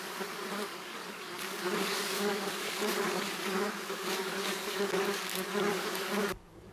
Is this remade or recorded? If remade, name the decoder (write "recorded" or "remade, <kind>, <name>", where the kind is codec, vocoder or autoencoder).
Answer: remade, codec, DAC